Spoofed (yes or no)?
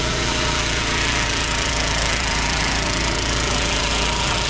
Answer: yes